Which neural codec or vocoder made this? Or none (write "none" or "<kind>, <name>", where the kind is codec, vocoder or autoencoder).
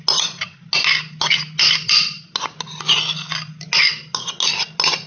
none